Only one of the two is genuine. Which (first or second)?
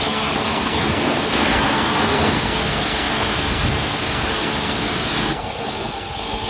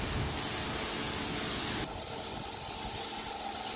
second